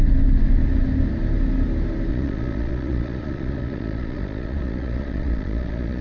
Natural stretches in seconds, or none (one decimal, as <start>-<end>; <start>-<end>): 0.0-2.1